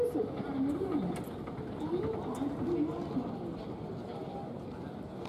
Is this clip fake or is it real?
real